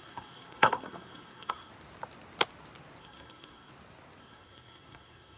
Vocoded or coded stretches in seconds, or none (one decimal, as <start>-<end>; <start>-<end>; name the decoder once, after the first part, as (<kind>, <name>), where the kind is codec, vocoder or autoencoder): 0.0-1.7 (codec, SNAC); 3.0-3.7; 4.2-5.4